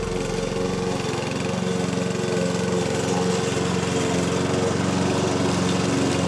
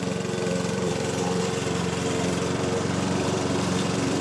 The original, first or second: first